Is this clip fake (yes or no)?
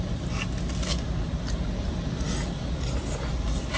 no